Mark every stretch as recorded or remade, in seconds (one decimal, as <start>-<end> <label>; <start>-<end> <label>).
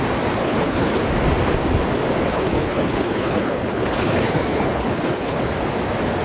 0.0-0.4 recorded; 0.4-1.0 remade; 1.0-2.3 recorded; 2.3-5.4 remade; 5.4-6.2 recorded